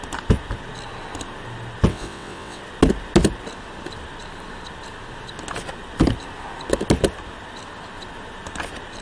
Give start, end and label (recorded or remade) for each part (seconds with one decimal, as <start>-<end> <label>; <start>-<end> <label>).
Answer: 0.0-1.9 recorded; 1.9-2.6 remade; 2.6-9.0 recorded